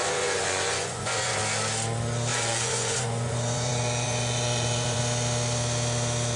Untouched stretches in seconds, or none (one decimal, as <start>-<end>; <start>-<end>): 1.4-2.3; 5.0-6.4

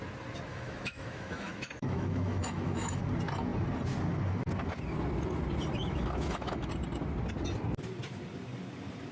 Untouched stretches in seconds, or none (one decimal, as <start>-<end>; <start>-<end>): 0.0-0.5; 3.0-5.8; 6.7-9.1

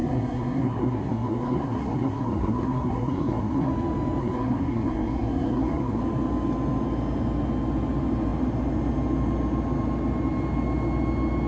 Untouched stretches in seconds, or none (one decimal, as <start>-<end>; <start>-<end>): 3.7-4.2; 6.0-11.5

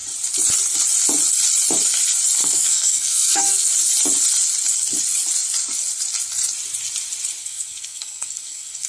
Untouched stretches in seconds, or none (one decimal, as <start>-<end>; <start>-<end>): 0.0-2.4; 3.7-7.4

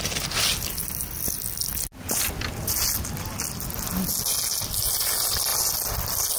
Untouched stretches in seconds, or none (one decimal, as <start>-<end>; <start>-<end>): 0.0-6.4

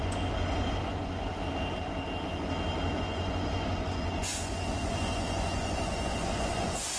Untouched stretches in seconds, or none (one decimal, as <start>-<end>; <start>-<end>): 1.3-3.0